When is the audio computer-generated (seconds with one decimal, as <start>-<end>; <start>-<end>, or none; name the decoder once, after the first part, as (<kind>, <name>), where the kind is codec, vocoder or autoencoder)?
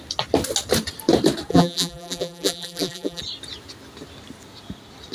1.5-3.2 (vocoder, BigVGAN v2)